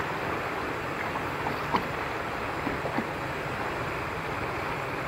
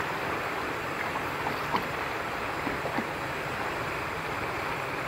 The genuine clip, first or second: first